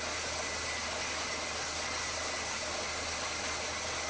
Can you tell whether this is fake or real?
real